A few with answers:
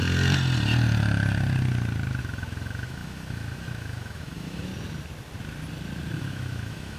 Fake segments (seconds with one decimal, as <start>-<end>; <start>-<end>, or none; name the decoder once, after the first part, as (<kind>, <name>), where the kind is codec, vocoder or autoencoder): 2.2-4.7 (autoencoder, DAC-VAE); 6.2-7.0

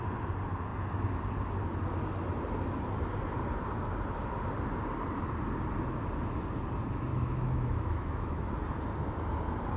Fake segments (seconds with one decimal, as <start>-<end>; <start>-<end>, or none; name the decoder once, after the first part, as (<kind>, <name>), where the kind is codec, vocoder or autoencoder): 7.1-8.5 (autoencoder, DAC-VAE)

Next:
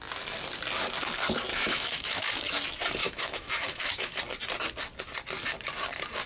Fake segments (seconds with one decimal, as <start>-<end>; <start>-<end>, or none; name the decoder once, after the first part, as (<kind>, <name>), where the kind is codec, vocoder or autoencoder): 1.5-2.3 (autoencoder, DAC-VAE); 3.0-4.2

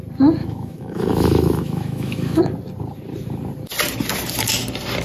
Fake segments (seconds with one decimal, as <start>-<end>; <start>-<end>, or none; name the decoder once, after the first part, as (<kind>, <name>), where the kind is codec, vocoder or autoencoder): 0.4-2.4 (autoencoder, DAC-VAE)

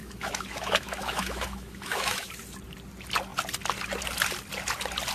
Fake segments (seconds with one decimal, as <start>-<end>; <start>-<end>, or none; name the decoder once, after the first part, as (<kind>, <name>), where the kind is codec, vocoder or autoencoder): 0.0-2.3 (autoencoder, DAC-VAE)

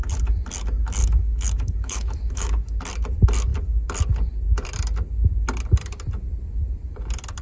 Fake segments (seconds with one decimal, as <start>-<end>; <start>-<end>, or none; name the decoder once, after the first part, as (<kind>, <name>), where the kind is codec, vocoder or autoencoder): 1.0-2.8 (autoencoder, DAC-VAE)

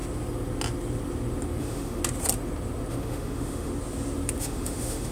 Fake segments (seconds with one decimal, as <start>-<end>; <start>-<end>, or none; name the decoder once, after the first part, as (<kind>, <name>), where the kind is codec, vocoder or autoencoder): 1.6-2.0 (autoencoder, DAC-VAE); 2.9-3.7; 4.4-5.1